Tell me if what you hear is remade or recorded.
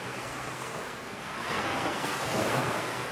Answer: remade